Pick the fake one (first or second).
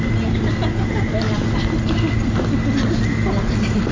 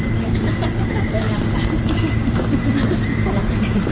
second